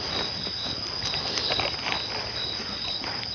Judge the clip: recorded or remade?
recorded